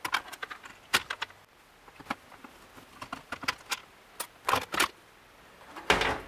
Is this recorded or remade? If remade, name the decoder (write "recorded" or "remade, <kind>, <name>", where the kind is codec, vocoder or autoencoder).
recorded